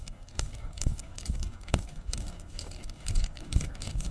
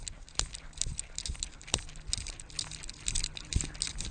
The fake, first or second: first